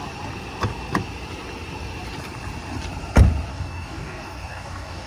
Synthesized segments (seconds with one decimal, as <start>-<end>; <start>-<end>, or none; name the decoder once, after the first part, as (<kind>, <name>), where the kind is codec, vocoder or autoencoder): 3.5-5.1 (codec, DAC)